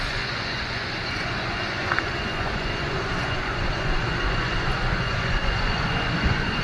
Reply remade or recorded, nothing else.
remade